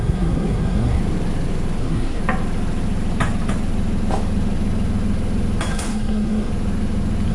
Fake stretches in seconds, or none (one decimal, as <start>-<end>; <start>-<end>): 0.0-1.0; 1.8-2.2; 5.7-6.5